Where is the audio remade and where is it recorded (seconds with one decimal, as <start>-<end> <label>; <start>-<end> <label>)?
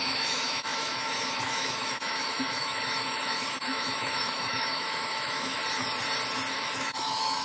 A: 0.0-5.6 remade; 5.6-6.5 recorded; 6.5-7.4 remade